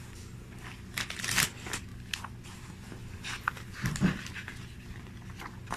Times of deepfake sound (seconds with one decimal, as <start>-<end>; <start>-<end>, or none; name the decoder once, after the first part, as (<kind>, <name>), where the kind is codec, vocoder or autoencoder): none